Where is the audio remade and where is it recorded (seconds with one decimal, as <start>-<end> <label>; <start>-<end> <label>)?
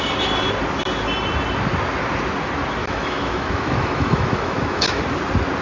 0.0-2.8 recorded; 2.8-5.0 remade; 5.0-5.6 recorded